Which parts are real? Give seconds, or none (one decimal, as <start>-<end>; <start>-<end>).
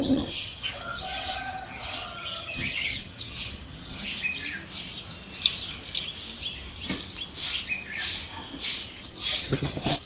4.1-9.0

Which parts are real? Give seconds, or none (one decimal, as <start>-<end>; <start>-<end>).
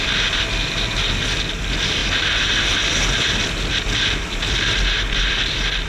0.0-5.9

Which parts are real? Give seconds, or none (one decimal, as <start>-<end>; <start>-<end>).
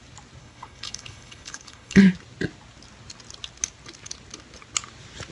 0.0-0.4; 2.0-5.3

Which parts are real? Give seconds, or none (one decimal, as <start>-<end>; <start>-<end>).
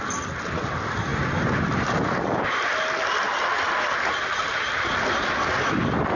0.0-6.2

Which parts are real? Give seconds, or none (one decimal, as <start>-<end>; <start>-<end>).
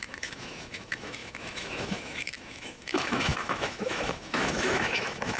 none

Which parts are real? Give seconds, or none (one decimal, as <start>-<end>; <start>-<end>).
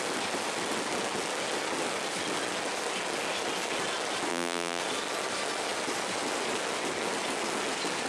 0.0-4.3; 4.8-8.1